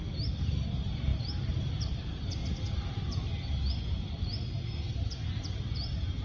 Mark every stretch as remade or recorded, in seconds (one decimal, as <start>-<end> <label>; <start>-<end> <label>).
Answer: 0.0-6.2 recorded